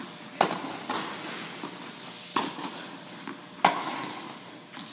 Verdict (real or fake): real